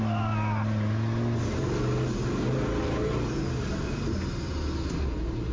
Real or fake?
real